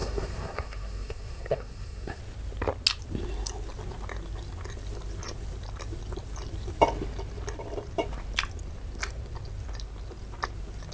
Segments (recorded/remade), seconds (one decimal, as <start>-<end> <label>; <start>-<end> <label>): 0.0-2.2 remade; 2.2-10.9 recorded